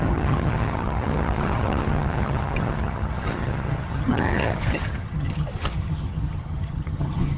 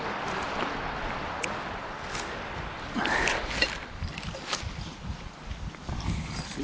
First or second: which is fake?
first